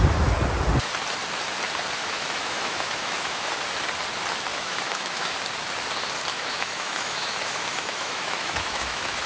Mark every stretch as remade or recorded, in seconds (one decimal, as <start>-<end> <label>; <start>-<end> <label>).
0.0-2.0 recorded; 2.0-3.5 remade; 3.5-4.5 recorded; 4.5-5.3 remade; 5.3-6.3 recorded; 6.3-9.3 remade